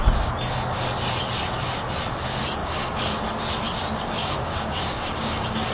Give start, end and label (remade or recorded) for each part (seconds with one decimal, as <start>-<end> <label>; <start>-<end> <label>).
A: 0.0-2.6 recorded; 2.6-3.2 remade; 3.2-4.2 recorded; 4.2-5.7 remade